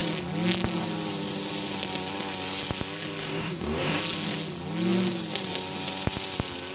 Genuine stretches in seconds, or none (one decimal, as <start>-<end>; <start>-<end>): 0.0-3.2; 4.0-6.7